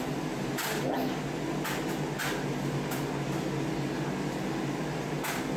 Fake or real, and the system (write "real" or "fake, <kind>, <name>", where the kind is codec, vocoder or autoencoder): real